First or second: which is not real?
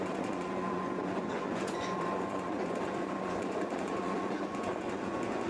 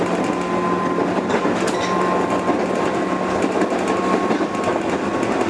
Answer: first